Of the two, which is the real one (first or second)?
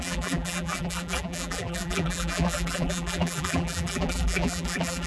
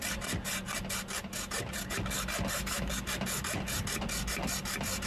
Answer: second